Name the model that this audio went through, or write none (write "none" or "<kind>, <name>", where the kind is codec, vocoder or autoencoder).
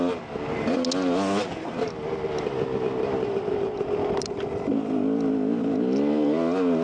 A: none